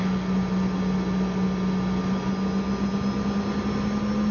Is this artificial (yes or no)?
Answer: no